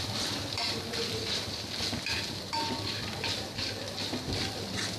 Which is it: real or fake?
fake